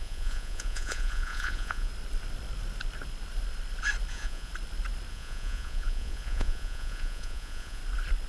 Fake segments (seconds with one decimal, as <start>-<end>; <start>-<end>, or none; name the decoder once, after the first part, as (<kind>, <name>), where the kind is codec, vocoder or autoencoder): 0.0-1.9 (vocoder, Vocos); 4.1-4.5; 5.1-7.8